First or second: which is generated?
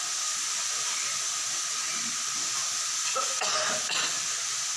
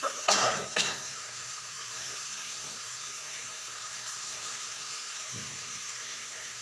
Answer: second